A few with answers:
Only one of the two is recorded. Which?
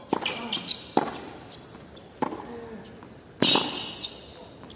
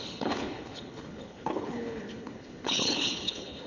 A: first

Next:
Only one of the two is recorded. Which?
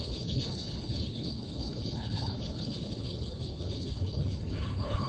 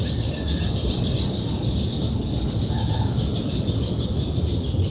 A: second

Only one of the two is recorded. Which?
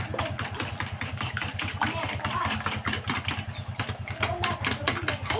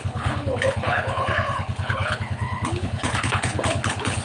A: first